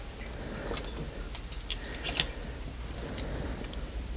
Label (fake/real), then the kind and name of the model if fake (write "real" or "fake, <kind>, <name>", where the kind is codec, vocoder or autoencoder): real